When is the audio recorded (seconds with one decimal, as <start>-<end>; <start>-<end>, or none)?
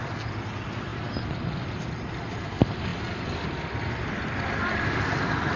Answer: 0.0-5.6